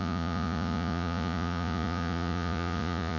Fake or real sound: fake